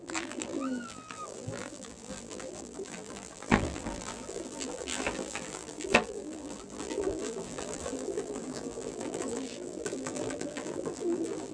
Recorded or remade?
remade